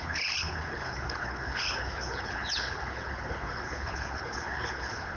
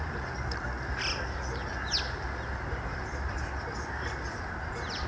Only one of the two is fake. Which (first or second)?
first